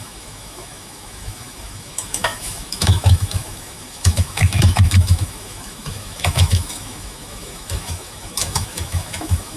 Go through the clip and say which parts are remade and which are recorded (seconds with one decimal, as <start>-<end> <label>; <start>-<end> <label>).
0.0-9.6 remade